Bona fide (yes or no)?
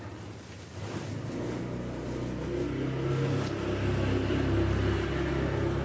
yes